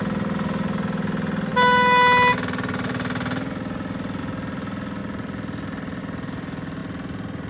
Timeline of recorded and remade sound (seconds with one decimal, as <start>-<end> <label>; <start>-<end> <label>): 0.0-5.0 recorded; 5.0-6.0 remade; 6.0-7.5 recorded